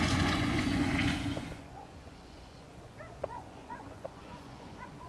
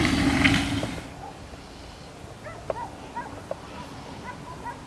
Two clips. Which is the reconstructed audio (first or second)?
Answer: first